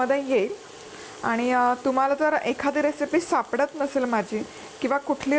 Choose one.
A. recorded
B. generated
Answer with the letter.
A